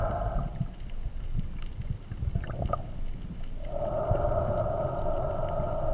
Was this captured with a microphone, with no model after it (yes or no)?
yes